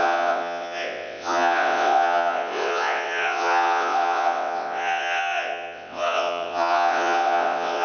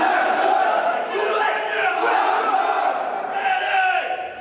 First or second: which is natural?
second